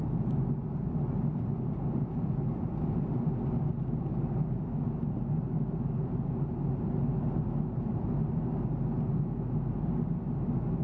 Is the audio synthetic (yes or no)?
no